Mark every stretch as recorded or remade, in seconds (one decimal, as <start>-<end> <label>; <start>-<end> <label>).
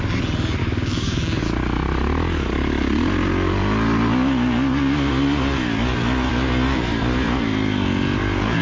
0.0-0.6 recorded; 0.6-1.4 remade; 1.4-8.6 recorded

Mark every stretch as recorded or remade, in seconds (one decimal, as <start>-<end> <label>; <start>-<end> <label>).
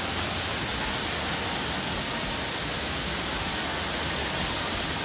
0.0-5.0 recorded